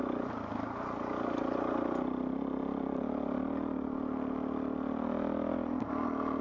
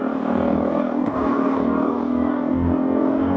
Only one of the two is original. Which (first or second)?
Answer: first